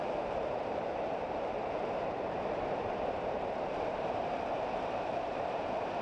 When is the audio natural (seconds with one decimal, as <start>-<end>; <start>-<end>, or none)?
none